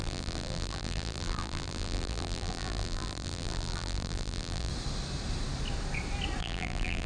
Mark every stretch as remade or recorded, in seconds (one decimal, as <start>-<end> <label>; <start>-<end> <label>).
0.0-4.7 remade; 4.7-6.4 recorded; 6.4-7.1 remade